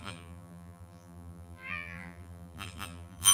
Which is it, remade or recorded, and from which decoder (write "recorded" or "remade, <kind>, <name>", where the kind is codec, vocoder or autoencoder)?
remade, vocoder, BigVGAN v2